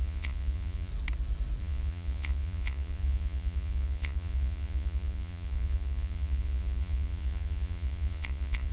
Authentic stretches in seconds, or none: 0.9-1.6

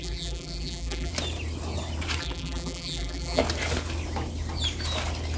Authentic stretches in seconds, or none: 1.1-2.2; 3.4-5.4

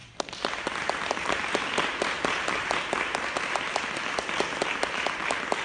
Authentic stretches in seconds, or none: 0.0-5.6

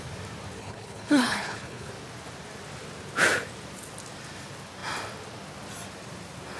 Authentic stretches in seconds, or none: 0.0-0.6; 1.9-6.6

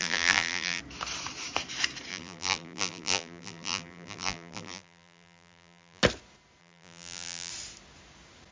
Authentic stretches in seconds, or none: 0.8-2.1; 6.0-6.6; 7.5-8.5

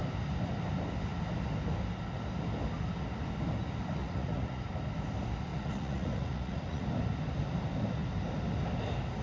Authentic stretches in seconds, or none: 0.0-4.0; 4.6-5.5; 6.9-9.2